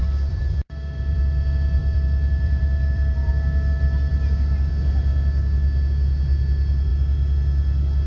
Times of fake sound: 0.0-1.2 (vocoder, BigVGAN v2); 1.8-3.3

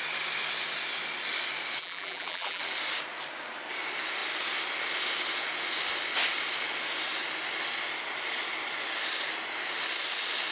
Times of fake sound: 1.8-2.6 (vocoder, BigVGAN v2)

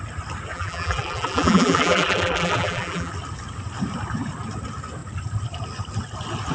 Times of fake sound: 0.5-3.1 (vocoder, BigVGAN v2)